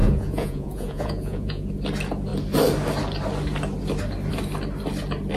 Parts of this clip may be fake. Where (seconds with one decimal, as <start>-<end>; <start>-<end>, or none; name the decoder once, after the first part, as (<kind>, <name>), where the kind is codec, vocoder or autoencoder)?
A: 0.0-1.7 (vocoder, Vocos)